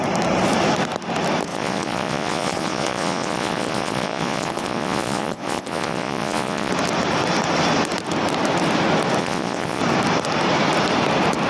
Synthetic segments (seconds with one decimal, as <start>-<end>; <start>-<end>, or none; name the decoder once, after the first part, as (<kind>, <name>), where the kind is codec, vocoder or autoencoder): 1.5-6.7 (vocoder, Vocos); 9.2-9.8